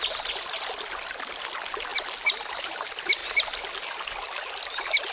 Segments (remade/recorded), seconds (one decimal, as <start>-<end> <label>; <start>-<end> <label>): 0.0-5.1 recorded

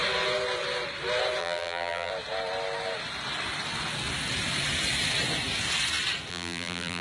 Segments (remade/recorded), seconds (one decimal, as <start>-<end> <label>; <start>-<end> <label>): 0.0-1.4 recorded; 1.4-2.1 remade; 2.1-6.3 recorded; 6.3-7.0 remade

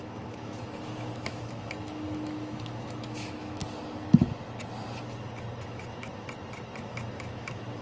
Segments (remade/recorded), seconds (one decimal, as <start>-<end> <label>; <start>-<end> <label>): 0.0-3.6 remade; 3.6-5.6 recorded; 5.6-6.0 remade; 6.0-6.8 recorded; 6.8-7.8 remade